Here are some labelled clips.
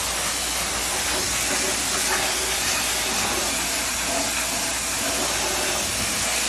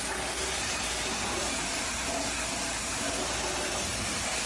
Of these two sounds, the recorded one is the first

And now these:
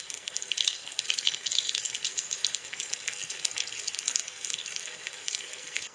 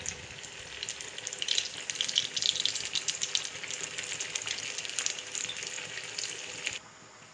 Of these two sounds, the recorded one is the second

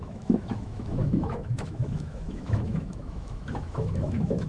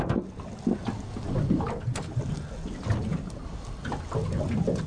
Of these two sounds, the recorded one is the second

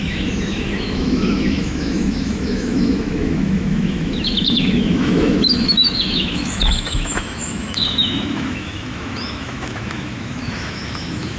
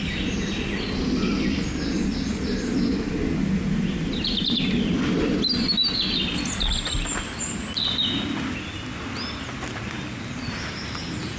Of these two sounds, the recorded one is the second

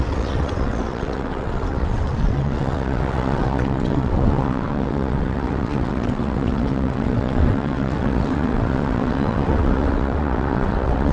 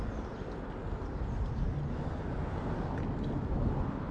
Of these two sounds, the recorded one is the second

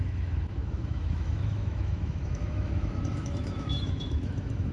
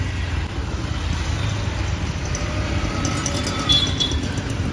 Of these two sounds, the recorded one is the second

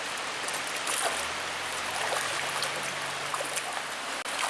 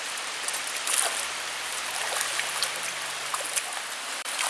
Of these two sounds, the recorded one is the first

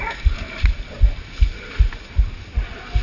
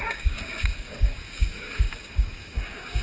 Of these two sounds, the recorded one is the first